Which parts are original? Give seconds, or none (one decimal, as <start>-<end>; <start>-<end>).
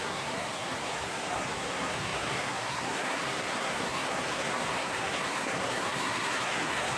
none